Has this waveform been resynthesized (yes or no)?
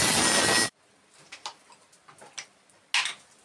no